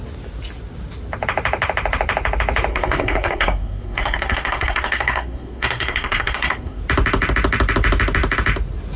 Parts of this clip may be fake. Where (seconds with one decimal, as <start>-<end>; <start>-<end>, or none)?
2.7-6.8